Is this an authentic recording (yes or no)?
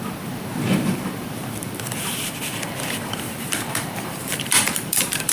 no